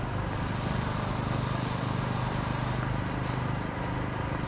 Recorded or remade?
recorded